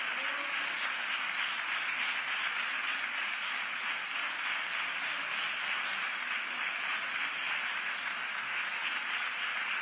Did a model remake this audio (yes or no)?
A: no